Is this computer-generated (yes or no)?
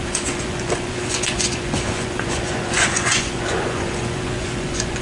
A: yes